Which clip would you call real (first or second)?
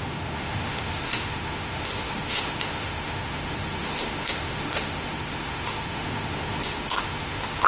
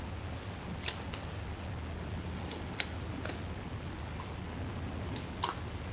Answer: second